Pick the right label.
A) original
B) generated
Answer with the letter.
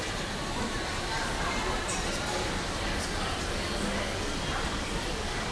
B